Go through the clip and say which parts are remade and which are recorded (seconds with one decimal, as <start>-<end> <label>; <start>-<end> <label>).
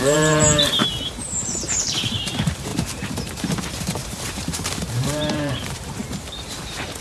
0.0-7.0 remade